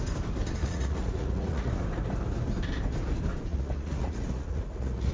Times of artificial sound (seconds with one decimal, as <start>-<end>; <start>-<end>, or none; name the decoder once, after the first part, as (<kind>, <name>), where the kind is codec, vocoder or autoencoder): 0.6-1.7 (vocoder, Vocos); 3.5-5.1